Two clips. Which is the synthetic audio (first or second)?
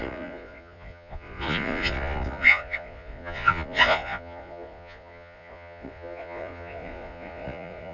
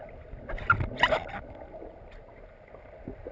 first